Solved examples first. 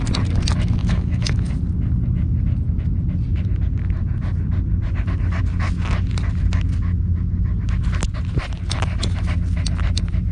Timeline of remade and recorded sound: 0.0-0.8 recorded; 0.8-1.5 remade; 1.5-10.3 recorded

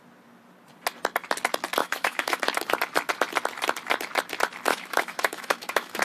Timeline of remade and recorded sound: 0.0-1.8 recorded; 1.8-2.4 remade; 2.4-4.7 recorded; 4.7-6.0 remade

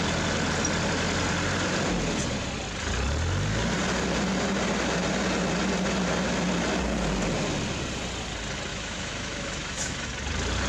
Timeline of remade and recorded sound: 0.0-8.7 recorded; 8.7-10.1 remade; 10.1-10.7 recorded

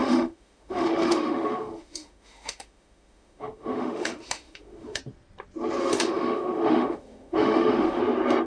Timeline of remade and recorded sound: 0.0-5.0 remade; 5.0-5.8 recorded; 5.8-8.0 remade; 8.0-8.5 recorded

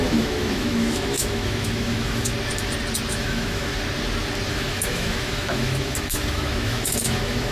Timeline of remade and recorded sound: 0.0-2.3 remade; 2.3-3.1 recorded; 3.1-3.7 remade; 3.7-4.5 recorded; 4.5-7.5 remade

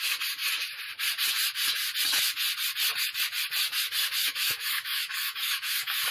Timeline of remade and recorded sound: 0.0-4.2 recorded; 4.2-6.1 remade

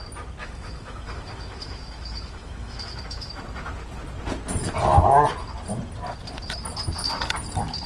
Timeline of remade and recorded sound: 0.0-0.4 recorded; 0.4-3.3 remade; 3.3-7.9 recorded